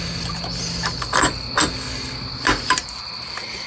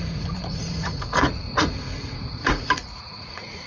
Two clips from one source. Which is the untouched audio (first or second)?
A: first